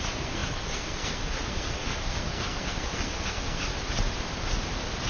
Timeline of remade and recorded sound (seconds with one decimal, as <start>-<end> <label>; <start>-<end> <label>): 0.0-3.7 remade; 3.7-5.1 recorded